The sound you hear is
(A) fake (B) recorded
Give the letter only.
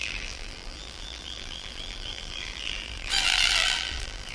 A